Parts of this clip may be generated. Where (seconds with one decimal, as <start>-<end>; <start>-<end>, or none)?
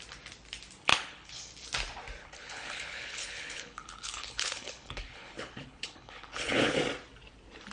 0.9-1.5; 2.2-6.8